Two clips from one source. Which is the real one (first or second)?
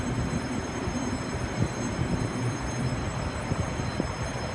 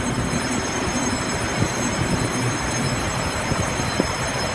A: first